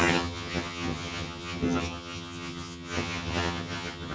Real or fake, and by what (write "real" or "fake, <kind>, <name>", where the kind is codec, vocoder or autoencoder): fake, vocoder, HiFi-GAN